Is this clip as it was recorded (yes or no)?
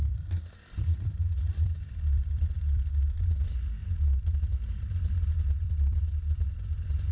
no